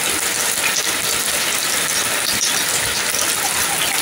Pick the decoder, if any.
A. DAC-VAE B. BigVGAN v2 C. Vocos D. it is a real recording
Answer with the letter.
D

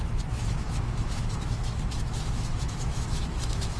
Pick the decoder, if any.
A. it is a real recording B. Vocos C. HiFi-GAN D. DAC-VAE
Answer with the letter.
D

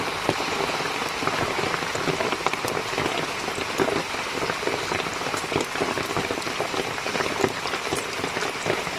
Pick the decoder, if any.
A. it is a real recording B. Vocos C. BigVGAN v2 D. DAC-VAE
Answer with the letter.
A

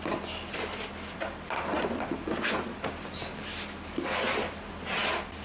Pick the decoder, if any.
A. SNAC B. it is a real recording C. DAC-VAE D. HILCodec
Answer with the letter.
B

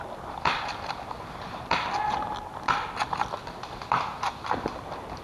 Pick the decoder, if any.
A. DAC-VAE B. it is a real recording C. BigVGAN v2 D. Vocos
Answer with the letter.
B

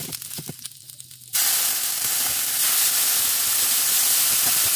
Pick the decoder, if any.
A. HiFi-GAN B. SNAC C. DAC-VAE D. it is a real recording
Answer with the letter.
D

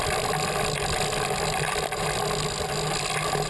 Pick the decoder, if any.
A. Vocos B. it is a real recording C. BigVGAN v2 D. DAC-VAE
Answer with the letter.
B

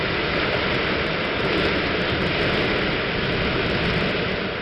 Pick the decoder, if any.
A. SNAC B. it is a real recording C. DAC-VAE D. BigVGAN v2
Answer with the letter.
B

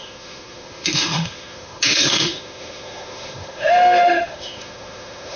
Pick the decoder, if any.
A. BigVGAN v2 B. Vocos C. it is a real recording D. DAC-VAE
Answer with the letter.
D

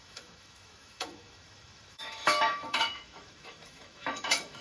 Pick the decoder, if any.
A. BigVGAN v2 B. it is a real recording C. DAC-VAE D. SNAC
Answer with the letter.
C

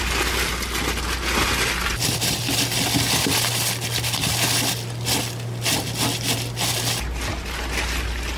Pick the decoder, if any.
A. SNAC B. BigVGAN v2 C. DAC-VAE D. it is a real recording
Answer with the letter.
D